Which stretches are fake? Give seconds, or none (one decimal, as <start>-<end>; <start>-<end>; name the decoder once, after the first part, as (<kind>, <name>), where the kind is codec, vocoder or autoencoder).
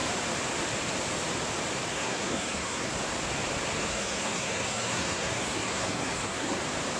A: 1.9-2.9 (codec, SNAC); 3.9-6.6